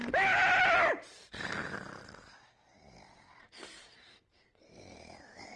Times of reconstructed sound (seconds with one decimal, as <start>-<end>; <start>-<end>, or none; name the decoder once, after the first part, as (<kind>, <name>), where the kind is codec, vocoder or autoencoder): 3.4-5.6 (vocoder, BigVGAN v2)